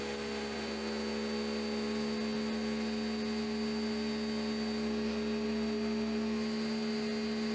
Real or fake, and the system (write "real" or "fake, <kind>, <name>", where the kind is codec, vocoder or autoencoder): real